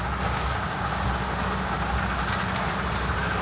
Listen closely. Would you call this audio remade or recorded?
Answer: recorded